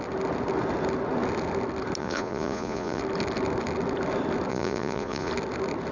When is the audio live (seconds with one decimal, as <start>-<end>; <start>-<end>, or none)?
0.0-2.0; 3.0-4.5; 5.3-5.9